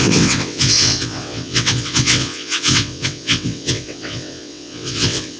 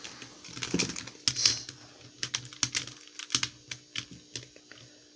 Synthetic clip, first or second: first